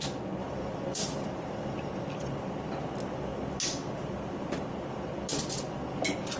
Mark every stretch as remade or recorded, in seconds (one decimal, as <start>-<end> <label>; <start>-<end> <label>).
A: 0.0-0.4 recorded; 0.4-2.2 remade; 2.2-6.4 recorded